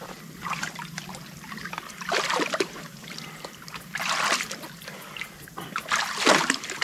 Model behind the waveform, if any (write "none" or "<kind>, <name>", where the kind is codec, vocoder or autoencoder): vocoder, BigVGAN v2